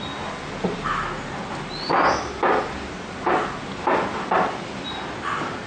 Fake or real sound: real